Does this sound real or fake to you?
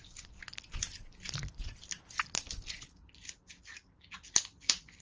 real